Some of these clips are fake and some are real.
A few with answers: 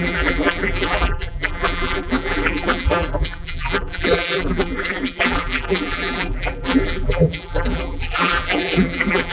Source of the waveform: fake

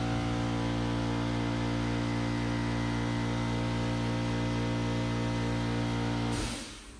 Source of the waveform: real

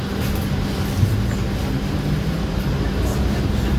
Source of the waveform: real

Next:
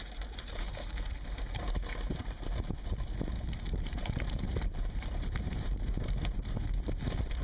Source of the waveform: fake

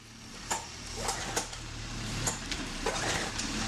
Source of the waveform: fake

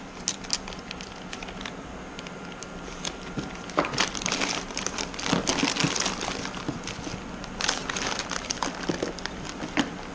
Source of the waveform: real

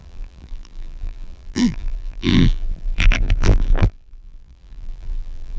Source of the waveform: fake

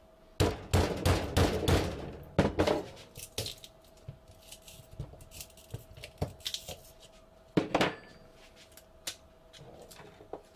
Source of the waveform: real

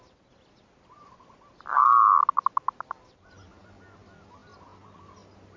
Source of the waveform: real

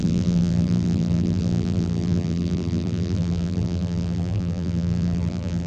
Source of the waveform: fake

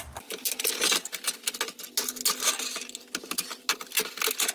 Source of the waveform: real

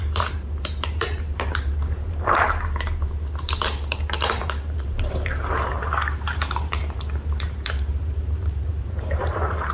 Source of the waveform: fake